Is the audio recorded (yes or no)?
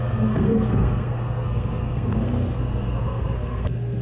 no